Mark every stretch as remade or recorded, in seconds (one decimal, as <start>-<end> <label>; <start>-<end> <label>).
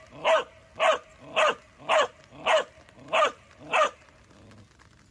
0.0-5.1 recorded